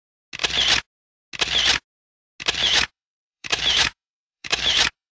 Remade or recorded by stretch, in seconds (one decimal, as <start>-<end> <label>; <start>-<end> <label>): 0.0-2.6 recorded; 2.6-5.1 remade